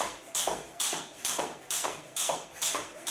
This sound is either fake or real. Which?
fake